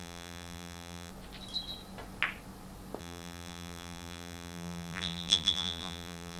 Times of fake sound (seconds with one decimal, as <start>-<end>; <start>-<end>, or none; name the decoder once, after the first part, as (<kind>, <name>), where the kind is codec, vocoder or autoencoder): 0.0-1.1 (vocoder, BigVGAN v2); 3.0-6.4